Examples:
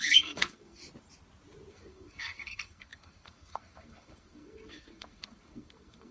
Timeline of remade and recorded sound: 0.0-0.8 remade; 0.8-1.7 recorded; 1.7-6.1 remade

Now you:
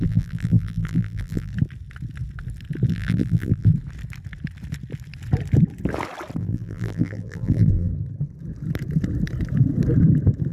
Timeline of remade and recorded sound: 0.0-1.5 remade; 1.5-2.9 recorded; 2.9-3.7 remade; 3.7-6.4 recorded; 6.4-7.9 remade; 7.9-10.5 recorded

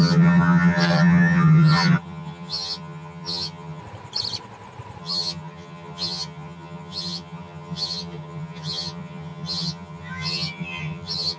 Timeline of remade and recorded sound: 0.0-3.8 remade; 3.8-5.0 recorded; 5.0-11.4 remade

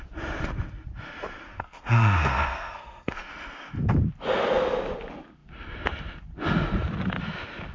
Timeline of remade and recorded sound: 0.0-1.5 recorded; 1.5-3.3 remade; 3.3-7.7 recorded